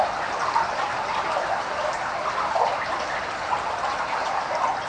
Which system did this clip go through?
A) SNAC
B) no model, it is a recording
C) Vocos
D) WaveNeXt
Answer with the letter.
B